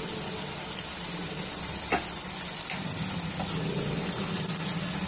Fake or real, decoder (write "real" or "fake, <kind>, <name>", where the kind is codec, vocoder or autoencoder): real